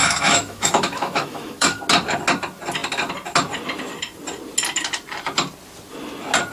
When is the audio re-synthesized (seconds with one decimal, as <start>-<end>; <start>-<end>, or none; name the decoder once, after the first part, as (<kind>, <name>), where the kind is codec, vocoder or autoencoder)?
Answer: 0.0-1.8 (autoencoder, DAC-VAE)